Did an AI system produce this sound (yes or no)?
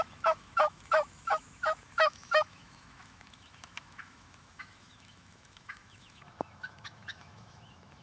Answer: yes